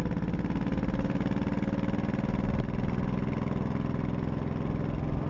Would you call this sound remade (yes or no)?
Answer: no